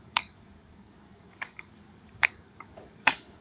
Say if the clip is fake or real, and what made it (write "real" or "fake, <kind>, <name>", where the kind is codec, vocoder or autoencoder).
fake, codec, DAC